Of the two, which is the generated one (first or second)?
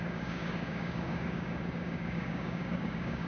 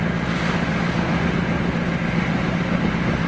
first